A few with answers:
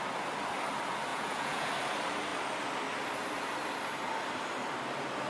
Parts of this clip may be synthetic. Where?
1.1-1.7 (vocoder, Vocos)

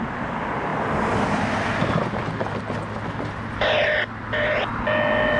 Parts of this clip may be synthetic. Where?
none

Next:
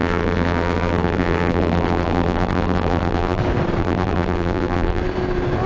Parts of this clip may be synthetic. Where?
0.0-3.4 (vocoder, BigVGAN v2); 3.8-5.0

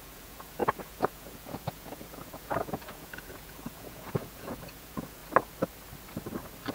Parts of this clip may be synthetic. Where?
0.0-5.2 (vocoder, Vocos)

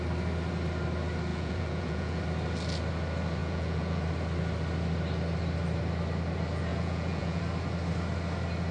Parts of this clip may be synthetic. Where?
1.3-2.2 (vocoder, Vocos); 3.4-4.0; 6.7-7.4

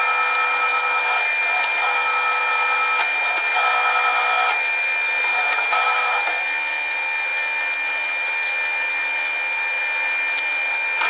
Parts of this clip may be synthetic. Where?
5.3-6.0 (autoencoder, DAC-VAE)